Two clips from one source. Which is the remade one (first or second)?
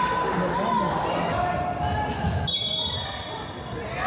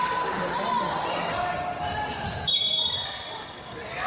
second